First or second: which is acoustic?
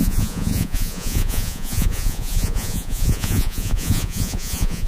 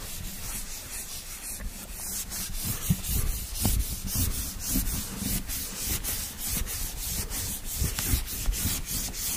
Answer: second